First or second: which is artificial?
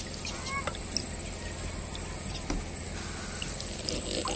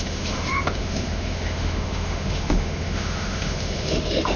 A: second